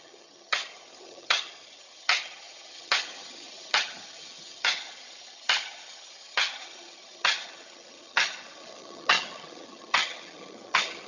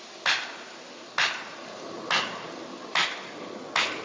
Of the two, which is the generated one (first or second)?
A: first